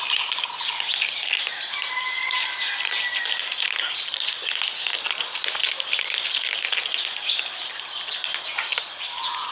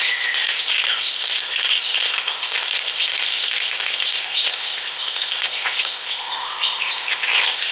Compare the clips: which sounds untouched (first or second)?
first